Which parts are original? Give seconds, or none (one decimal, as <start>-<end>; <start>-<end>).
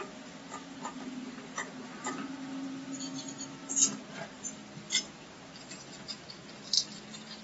0.0-7.4